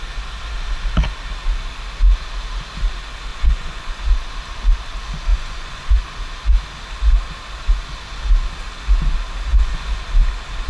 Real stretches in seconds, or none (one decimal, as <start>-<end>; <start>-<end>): 0.0-3.3; 4.0-5.3; 6.0-9.5; 10.0-10.7